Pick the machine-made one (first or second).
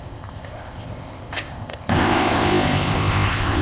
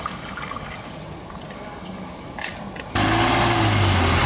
first